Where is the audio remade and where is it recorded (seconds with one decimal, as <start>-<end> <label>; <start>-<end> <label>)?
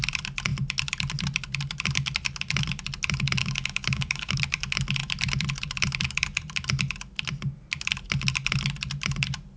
0.0-3.4 recorded; 3.4-4.4 remade; 4.4-9.6 recorded